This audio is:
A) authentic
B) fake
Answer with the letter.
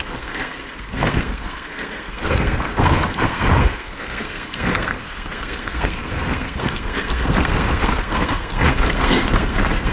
B